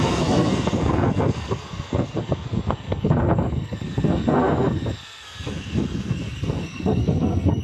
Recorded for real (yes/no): no